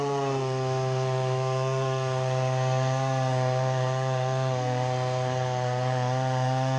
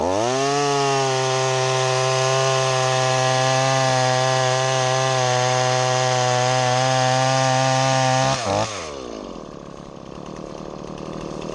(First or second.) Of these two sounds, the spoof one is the first